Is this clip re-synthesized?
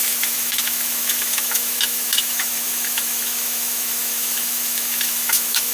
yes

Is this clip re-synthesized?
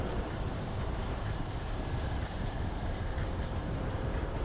yes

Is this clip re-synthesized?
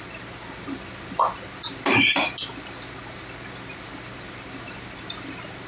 no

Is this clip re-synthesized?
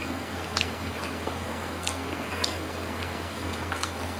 yes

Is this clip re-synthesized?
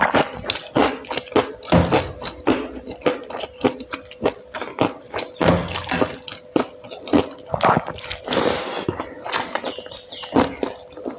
no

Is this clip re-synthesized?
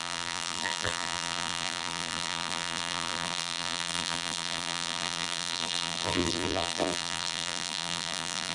yes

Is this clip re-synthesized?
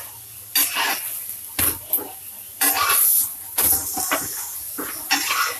no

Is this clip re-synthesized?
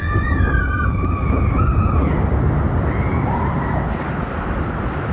no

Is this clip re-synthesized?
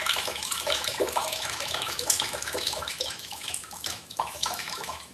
yes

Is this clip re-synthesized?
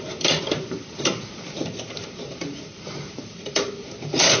yes